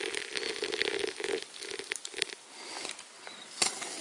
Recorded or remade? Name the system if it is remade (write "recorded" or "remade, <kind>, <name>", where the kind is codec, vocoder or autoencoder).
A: recorded